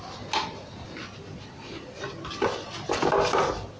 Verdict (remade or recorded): recorded